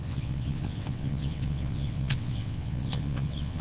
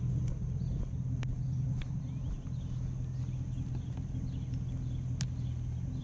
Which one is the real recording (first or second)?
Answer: second